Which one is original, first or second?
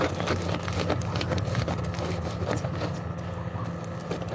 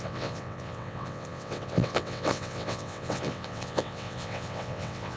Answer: first